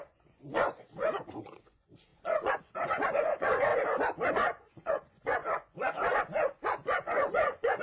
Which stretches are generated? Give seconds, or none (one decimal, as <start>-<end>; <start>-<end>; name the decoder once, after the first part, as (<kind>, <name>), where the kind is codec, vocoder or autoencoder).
0.0-3.7 (vocoder, Vocos); 4.3-7.8